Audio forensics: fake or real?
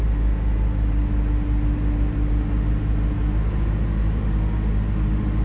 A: real